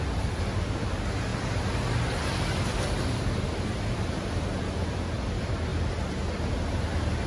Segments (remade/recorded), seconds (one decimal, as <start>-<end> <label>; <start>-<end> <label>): 0.0-7.3 recorded